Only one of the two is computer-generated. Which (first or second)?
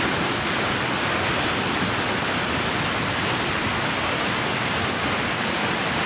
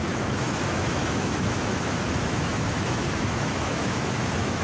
second